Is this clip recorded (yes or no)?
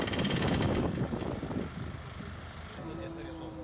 yes